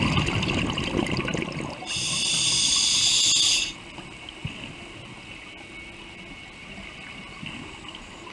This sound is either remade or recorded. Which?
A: recorded